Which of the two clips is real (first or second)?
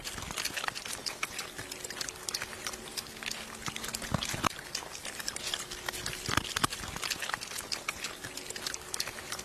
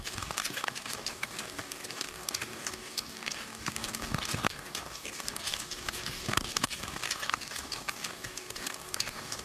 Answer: first